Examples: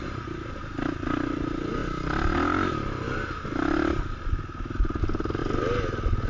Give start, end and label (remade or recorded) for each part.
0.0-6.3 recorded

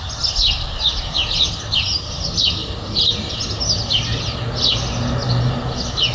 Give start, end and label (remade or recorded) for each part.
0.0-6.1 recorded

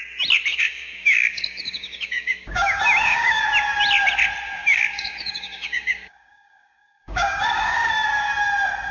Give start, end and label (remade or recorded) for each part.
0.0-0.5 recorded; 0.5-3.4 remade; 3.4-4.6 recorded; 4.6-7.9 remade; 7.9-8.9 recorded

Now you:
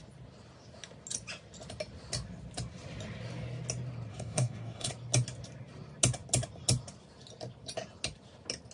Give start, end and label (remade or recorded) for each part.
0.0-4.1 recorded; 4.1-4.9 remade; 4.9-8.7 recorded